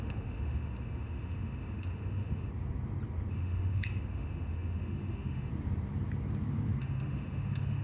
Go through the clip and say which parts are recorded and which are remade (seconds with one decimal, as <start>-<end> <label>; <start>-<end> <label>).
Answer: 0.0-2.5 remade; 2.5-3.3 recorded; 3.3-5.5 remade; 5.5-6.8 recorded; 6.8-7.8 remade